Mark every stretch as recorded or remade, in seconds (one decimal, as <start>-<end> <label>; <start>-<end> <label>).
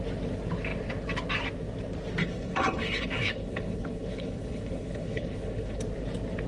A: 0.0-2.2 recorded; 2.2-5.8 remade; 5.8-6.5 recorded